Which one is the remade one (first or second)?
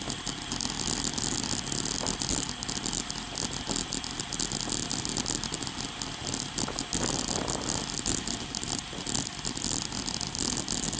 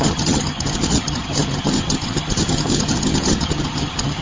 second